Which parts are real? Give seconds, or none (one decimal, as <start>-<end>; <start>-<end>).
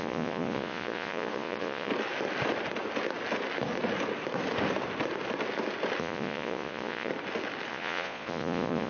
1.9-6.0; 7.1-7.7